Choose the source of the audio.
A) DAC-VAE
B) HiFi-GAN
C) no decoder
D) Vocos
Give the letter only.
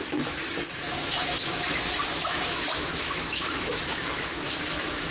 A